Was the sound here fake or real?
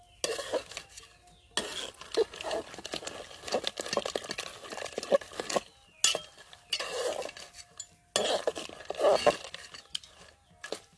real